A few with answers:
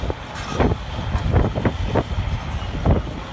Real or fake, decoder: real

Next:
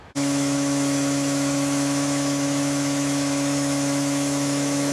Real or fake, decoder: fake, autoencoder, DAC-VAE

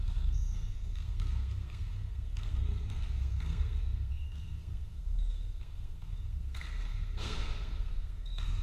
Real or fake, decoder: fake, codec, SNAC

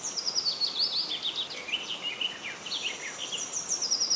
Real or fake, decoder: real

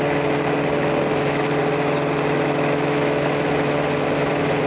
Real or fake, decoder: real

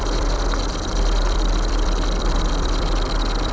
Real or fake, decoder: fake, vocoder, BigVGAN v2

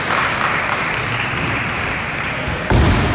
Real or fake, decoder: real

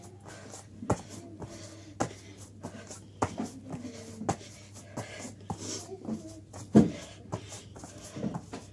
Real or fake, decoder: real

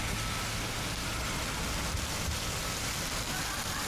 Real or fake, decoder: real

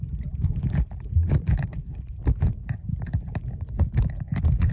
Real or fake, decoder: real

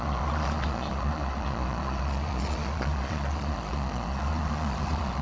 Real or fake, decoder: fake, vocoder, Vocos